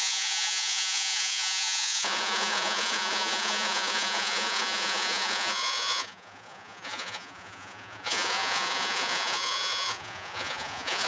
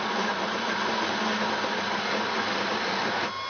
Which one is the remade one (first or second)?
first